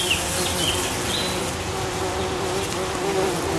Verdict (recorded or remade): recorded